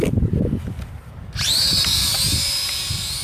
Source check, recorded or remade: recorded